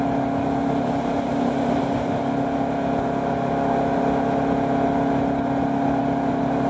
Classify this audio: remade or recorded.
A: recorded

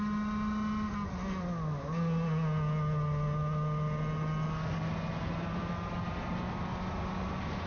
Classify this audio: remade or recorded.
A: recorded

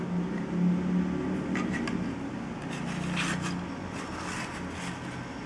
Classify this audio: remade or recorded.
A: recorded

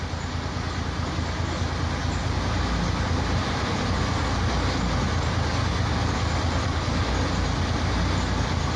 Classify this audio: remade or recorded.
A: recorded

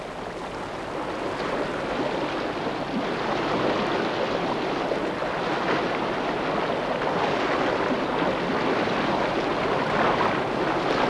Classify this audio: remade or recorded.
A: recorded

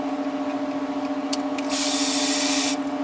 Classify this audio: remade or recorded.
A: recorded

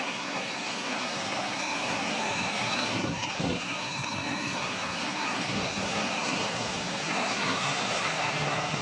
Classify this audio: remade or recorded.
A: remade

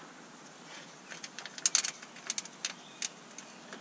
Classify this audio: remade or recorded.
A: recorded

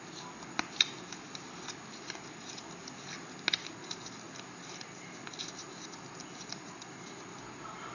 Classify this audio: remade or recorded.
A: recorded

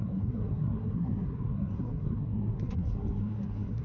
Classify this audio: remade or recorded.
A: remade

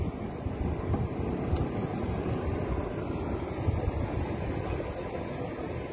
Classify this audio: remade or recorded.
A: recorded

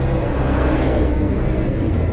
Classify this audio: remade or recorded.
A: remade